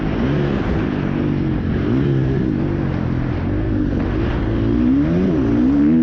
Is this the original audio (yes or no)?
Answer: yes